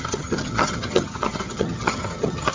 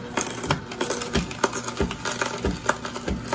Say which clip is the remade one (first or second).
first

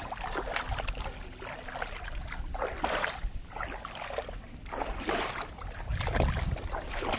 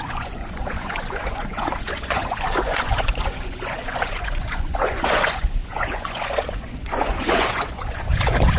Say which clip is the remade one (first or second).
second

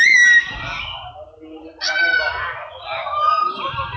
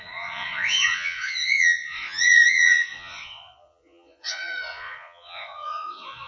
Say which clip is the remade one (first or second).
second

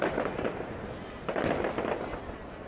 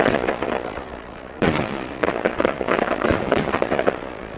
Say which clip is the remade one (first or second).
second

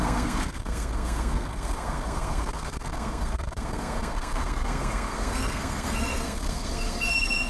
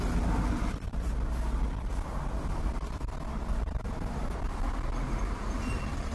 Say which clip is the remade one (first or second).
first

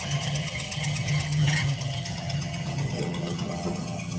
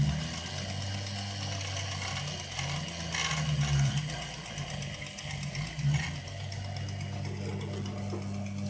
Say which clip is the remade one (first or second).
first